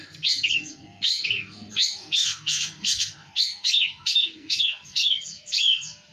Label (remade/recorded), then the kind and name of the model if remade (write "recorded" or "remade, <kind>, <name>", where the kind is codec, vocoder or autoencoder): remade, codec, SNAC